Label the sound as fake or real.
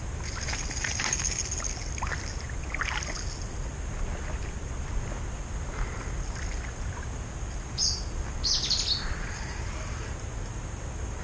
real